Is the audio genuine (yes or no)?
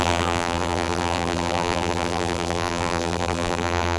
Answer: no